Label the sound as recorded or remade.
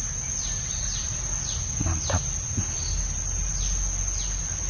recorded